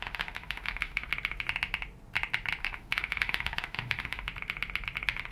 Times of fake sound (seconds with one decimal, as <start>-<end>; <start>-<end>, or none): 0.0-1.1; 2.6-4.3